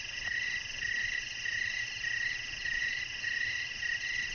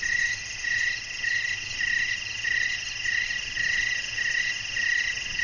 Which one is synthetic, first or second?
first